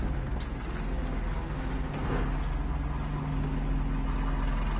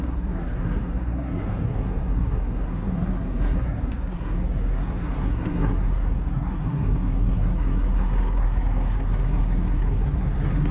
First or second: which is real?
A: first